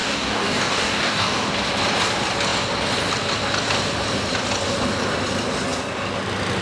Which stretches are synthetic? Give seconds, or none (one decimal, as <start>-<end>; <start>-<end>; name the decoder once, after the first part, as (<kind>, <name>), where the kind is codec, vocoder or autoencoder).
0.0-1.5 (codec, DAC)

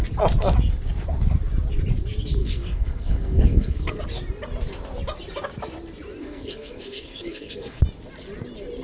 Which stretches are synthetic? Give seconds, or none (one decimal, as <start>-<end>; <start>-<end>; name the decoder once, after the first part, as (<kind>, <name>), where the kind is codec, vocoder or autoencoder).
2.4-4.0 (codec, SNAC); 6.2-7.8

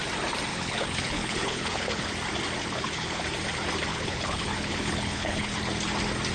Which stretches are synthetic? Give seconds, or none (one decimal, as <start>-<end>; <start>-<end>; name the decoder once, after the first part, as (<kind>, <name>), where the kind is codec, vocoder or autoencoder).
0.5-2.1 (codec, HILCodec); 2.6-3.2; 3.9-5.6

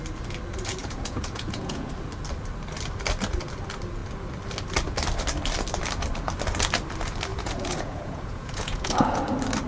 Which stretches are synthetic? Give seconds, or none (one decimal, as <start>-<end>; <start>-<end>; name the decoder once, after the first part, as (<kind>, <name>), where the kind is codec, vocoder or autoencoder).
0.8-1.9 (vocoder, Vocos); 7.3-9.2

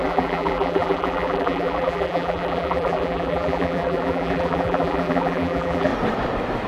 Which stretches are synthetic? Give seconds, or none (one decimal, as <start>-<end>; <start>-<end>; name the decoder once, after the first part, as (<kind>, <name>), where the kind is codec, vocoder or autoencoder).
0.0-5.9 (vocoder, BigVGAN v2)